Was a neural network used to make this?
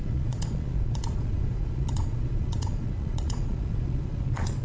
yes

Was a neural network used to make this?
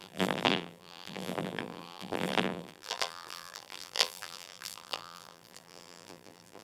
yes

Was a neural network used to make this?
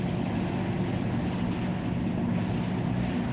no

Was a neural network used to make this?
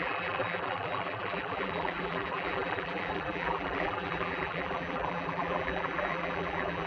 yes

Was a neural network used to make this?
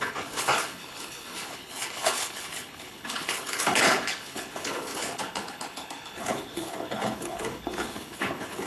yes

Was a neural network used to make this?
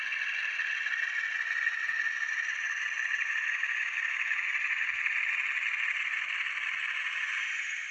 no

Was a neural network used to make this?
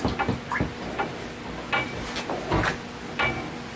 no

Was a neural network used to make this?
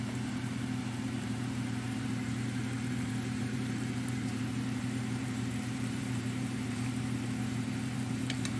yes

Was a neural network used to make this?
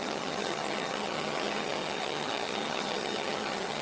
yes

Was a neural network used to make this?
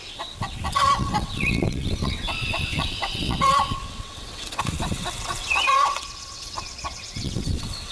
yes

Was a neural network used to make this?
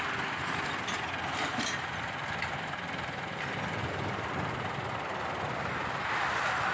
no